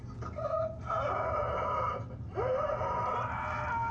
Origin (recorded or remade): recorded